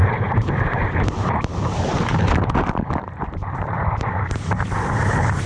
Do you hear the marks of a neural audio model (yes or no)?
yes